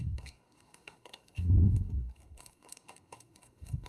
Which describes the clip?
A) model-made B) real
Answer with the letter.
A